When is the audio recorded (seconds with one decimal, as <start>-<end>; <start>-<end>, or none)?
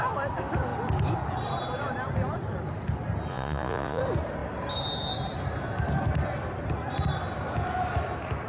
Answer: 0.0-3.3; 4.0-8.5